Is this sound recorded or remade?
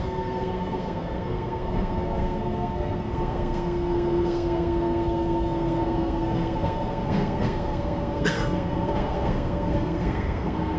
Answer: remade